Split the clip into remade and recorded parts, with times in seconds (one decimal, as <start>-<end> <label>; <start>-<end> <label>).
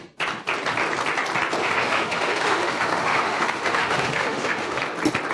0.0-1.6 recorded; 1.6-4.8 remade; 4.8-5.3 recorded